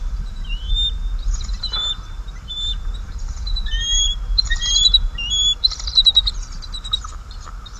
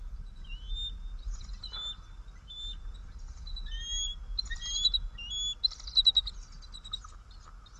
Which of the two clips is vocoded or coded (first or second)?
first